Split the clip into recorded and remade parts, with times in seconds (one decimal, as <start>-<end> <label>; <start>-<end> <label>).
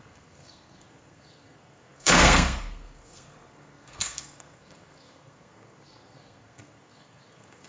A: 0.0-7.7 remade